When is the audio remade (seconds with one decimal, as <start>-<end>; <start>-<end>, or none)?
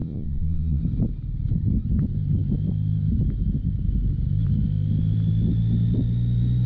0.0-0.8